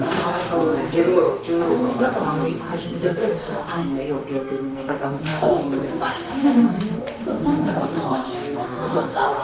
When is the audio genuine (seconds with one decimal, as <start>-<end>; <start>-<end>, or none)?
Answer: none